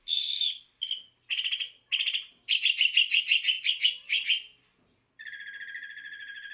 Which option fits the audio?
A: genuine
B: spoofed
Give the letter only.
A